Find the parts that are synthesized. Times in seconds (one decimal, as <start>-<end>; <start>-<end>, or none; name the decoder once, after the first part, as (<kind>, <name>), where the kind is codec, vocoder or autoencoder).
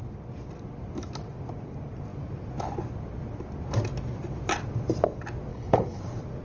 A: 5.5-6.0 (codec, HILCodec)